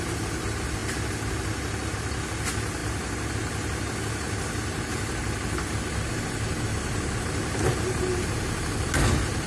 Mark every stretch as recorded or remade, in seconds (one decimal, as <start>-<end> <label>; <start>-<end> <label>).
0.0-9.5 recorded